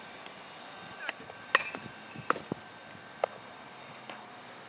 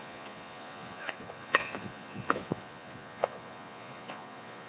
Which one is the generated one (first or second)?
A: second